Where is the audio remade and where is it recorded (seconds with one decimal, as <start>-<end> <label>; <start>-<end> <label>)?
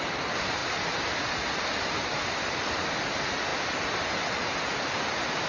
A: 0.0-3.5 remade; 3.5-5.0 recorded; 5.0-5.5 remade